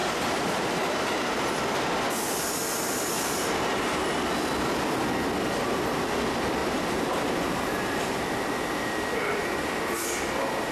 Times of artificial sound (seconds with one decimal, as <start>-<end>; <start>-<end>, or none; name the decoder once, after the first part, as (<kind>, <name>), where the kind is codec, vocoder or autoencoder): 0.0-1.6 (vocoder, BigVGAN v2); 2.8-3.5; 6.6-9.6